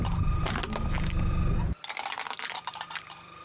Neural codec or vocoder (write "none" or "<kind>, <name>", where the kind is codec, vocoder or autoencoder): none